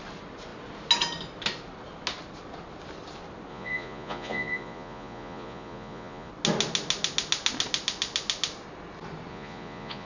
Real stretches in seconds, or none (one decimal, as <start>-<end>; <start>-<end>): 0.0-3.5; 6.3-9.3